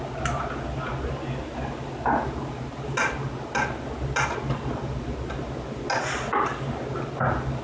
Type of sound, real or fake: real